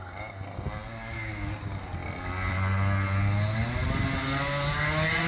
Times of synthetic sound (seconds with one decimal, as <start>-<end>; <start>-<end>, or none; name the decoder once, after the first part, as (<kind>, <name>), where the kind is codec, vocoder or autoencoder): none